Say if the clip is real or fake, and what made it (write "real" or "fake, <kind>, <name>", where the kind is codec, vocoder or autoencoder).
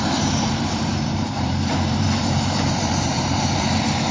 fake, vocoder, BigVGAN v2